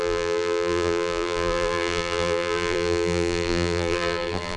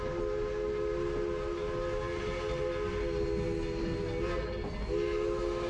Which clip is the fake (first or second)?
first